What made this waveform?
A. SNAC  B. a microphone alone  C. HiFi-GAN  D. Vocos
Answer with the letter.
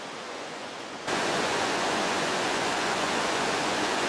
D